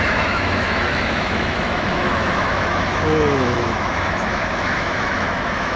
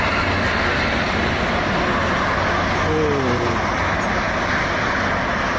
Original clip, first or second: second